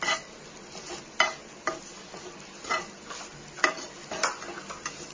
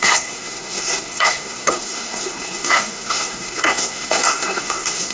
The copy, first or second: second